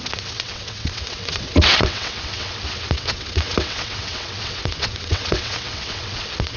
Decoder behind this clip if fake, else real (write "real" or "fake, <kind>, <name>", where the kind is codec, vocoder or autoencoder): fake, vocoder, WaveNeXt